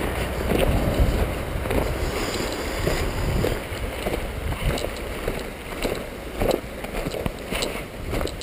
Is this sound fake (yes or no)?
no